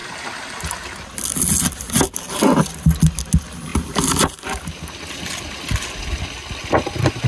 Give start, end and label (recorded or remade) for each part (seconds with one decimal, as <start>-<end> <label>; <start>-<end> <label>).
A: 0.0-7.3 recorded